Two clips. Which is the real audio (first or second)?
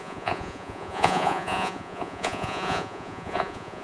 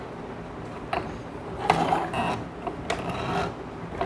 second